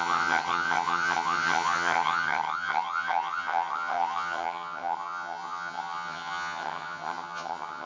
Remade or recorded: remade